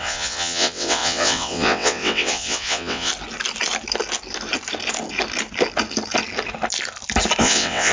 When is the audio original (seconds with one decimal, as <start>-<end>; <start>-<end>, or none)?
3.1-7.4

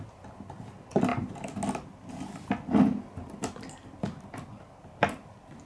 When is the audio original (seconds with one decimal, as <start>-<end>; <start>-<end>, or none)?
0.0-5.7

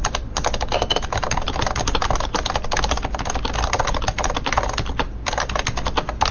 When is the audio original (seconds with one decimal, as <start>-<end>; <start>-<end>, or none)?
0.0-6.3

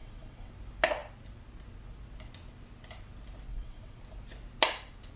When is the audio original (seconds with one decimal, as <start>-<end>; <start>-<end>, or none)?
0.5-3.5; 4.0-5.2

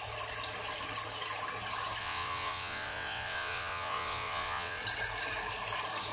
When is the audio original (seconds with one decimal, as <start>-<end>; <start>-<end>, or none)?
0.0-2.0; 4.8-6.1

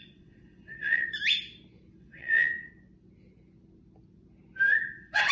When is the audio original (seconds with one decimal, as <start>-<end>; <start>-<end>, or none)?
1.1-2.0; 2.7-4.8

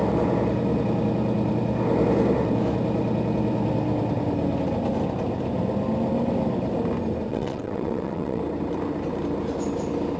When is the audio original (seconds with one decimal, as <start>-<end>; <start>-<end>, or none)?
0.0-7.3; 8.4-10.2

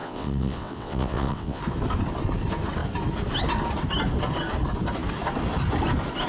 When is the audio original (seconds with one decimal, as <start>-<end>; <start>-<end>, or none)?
1.6-6.3